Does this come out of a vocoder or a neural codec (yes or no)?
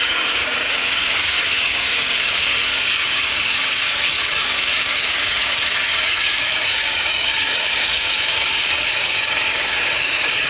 yes